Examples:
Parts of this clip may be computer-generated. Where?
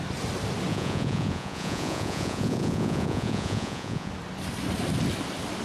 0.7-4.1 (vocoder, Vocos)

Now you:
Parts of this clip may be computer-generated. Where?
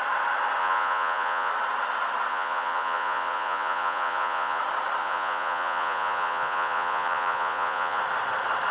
0.6-1.5 (vocoder, Vocos); 2.3-4.6; 5.0-8.0